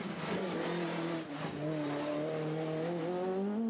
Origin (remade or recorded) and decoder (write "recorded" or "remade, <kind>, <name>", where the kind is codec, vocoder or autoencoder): recorded